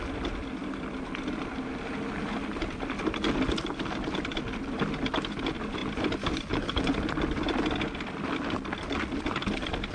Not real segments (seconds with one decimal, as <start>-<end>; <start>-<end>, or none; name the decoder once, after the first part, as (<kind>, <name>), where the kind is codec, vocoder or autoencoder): 4.3-4.9 (vocoder, BigVGAN v2); 5.8-7.4